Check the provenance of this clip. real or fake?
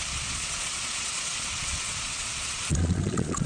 fake